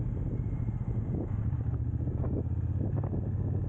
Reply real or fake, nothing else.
real